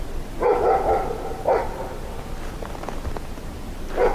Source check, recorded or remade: recorded